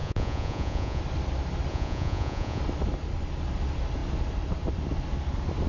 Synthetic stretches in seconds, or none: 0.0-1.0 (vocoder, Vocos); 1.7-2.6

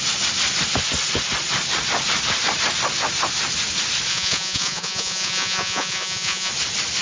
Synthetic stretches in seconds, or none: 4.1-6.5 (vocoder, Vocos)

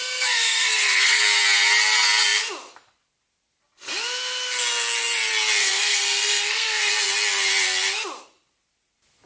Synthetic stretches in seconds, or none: 0.0-1.2 (codec, SNAC); 5.6-6.9